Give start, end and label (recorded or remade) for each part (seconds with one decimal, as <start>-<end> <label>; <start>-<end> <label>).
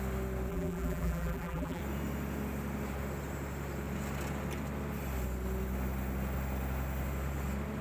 0.0-0.5 recorded; 0.5-1.8 remade; 1.8-7.8 recorded